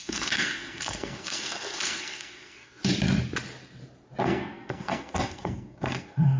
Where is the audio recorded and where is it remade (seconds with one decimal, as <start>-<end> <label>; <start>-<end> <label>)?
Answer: 0.0-2.8 remade; 2.8-4.2 recorded; 4.2-6.4 remade

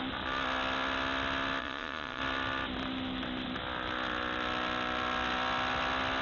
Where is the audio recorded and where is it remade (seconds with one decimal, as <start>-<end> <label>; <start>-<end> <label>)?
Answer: 0.0-1.6 recorded; 1.6-2.2 remade; 2.2-6.2 recorded